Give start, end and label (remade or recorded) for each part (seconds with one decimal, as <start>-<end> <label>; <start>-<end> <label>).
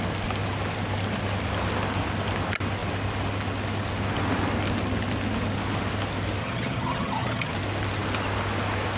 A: 0.0-6.4 recorded; 6.4-7.5 remade; 7.5-9.0 recorded